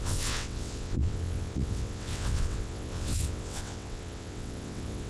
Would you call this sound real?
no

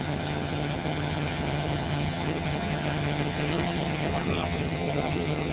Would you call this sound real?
no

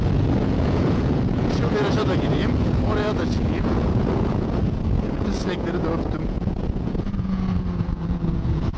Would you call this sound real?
no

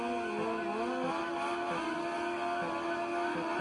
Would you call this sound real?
yes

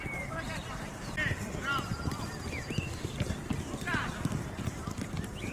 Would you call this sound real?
no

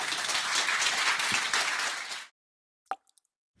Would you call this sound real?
yes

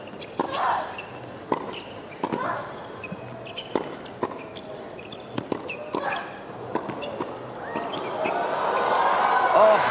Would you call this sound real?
yes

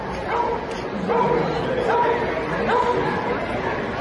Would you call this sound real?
yes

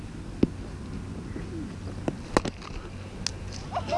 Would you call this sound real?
yes